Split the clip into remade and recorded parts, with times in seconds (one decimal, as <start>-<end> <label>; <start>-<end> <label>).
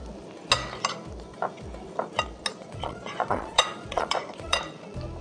0.0-2.5 recorded; 2.5-4.6 remade; 4.6-5.2 recorded